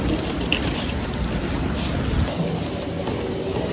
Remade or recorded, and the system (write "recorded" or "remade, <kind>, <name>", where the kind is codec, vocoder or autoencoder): recorded